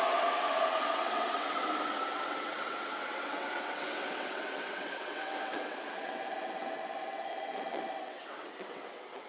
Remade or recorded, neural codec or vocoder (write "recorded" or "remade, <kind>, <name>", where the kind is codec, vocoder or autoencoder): remade, vocoder, WaveNeXt